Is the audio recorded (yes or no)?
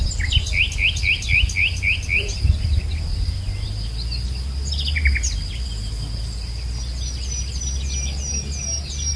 yes